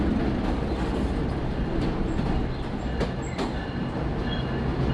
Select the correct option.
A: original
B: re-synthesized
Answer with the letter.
A